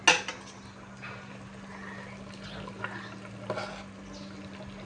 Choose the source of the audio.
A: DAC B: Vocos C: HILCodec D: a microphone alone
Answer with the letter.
D